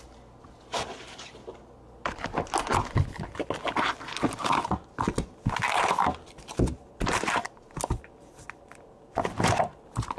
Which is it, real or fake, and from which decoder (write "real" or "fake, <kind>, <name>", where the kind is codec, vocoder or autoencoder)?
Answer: real